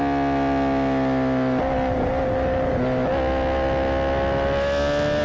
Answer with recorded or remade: recorded